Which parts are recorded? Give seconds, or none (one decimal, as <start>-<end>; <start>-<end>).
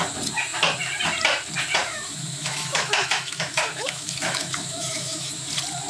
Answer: 0.0-1.8; 5.3-5.9